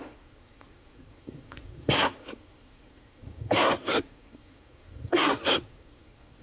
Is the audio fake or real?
fake